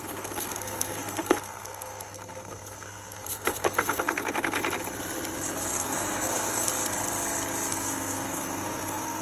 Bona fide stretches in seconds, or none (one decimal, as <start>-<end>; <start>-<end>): 4.6-5.5; 6.7-7.7